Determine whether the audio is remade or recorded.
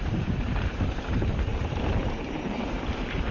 remade